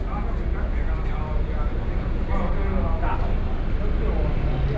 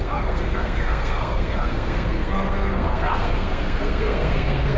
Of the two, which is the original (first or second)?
first